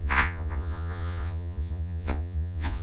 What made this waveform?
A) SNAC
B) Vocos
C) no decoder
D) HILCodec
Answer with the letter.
B